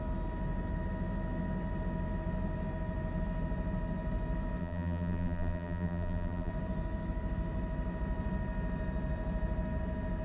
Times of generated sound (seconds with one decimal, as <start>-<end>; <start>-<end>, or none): 4.6-6.5